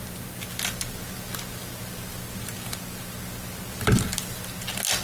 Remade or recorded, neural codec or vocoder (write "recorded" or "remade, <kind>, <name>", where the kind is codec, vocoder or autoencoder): recorded